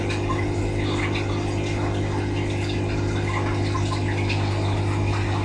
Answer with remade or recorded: recorded